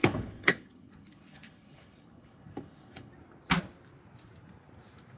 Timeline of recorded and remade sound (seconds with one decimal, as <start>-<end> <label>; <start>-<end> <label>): 0.0-3.1 remade; 3.1-5.2 recorded